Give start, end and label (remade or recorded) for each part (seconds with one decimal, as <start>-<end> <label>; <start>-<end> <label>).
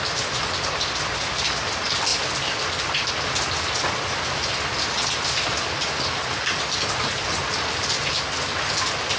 0.0-9.2 recorded